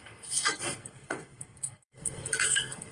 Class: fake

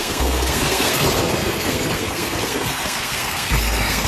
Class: fake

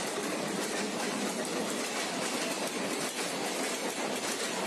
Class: real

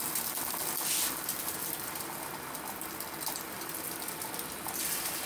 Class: real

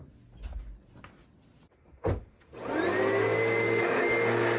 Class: real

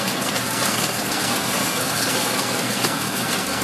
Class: fake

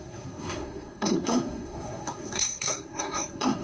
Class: fake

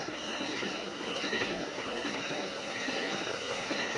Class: fake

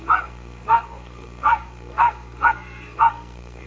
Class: fake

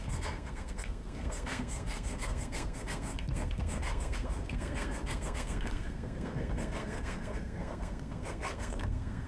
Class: fake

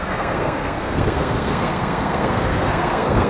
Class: fake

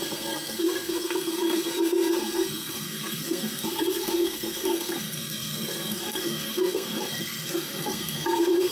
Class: fake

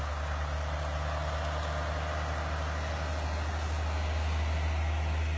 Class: real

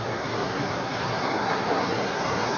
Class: fake